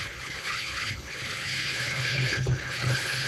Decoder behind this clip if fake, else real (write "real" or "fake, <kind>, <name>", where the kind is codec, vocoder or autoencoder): fake, codec, HILCodec